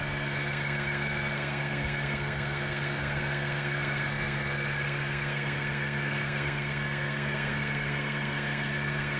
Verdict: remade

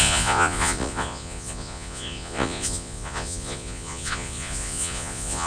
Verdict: remade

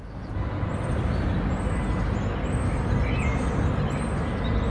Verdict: recorded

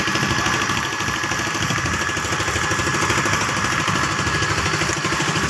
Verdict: recorded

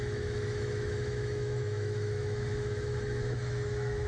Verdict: remade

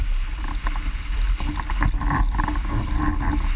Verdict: recorded